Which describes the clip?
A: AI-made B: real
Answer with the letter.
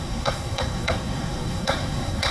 A